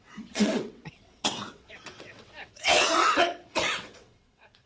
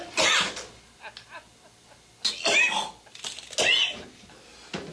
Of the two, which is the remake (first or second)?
first